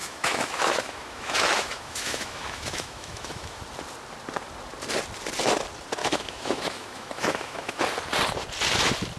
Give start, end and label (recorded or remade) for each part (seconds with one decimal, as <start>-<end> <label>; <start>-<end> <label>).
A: 0.0-3.6 remade; 3.6-6.0 recorded; 6.0-7.8 remade; 7.8-9.2 recorded